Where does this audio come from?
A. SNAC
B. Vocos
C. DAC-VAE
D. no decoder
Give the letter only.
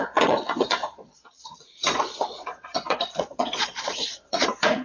B